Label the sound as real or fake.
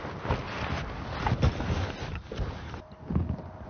real